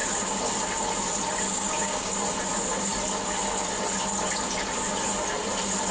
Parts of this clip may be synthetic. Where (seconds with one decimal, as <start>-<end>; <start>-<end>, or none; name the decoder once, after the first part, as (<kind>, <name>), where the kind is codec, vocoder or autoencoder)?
1.5-2.1 (codec, DAC)

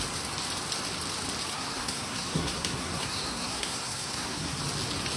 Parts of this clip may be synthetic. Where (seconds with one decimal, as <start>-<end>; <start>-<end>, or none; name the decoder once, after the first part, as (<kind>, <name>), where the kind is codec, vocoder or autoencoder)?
1.5-4.6 (codec, SNAC)